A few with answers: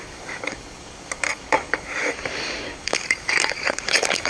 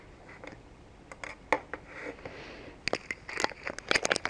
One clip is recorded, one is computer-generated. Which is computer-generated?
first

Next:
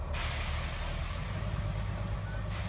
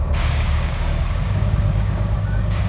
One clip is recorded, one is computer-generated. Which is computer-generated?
second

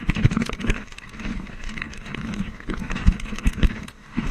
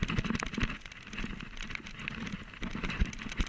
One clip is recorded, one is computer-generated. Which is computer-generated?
first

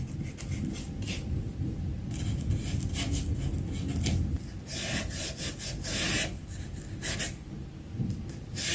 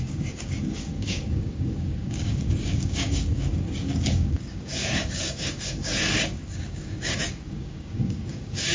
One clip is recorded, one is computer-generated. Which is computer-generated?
second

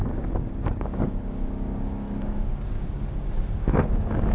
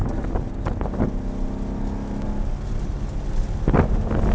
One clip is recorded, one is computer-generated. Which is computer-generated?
first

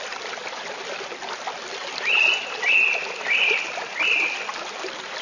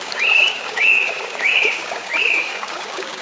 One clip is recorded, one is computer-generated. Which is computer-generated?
second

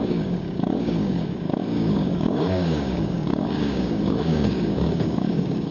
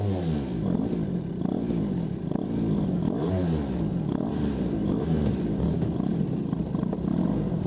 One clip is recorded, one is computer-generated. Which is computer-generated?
first